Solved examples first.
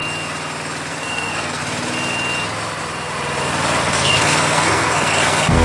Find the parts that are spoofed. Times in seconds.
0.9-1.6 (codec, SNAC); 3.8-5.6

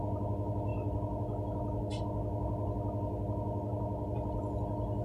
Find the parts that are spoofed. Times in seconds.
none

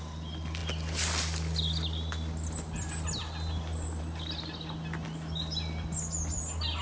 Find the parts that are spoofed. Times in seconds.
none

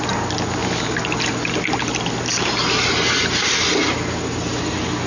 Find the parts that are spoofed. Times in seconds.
none

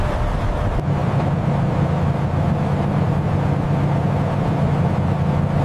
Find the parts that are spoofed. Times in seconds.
none

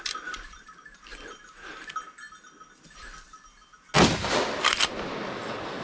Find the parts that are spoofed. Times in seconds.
none

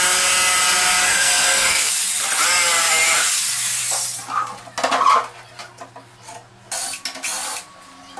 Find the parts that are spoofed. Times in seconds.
1.0-1.9 (codec, SNAC)